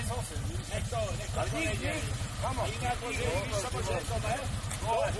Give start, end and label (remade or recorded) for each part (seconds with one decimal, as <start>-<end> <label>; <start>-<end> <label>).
0.0-5.2 recorded